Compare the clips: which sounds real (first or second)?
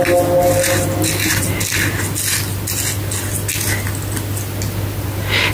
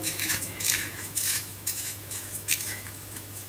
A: first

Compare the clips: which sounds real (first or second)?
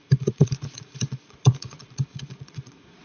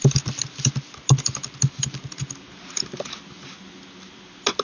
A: second